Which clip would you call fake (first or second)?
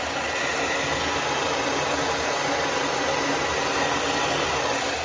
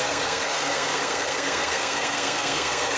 second